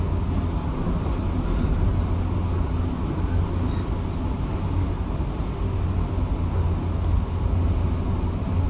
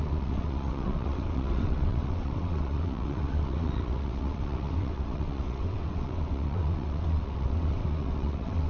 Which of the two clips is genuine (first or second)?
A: first